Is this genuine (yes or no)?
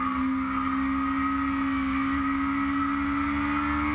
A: yes